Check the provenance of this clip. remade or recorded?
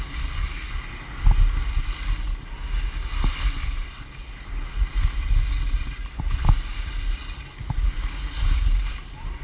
recorded